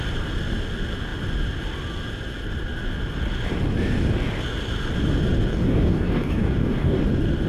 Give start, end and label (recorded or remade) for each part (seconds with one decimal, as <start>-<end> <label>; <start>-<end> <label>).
0.0-5.5 recorded; 5.5-7.0 remade; 7.0-7.5 recorded